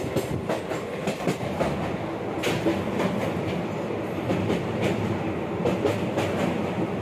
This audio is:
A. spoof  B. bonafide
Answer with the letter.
B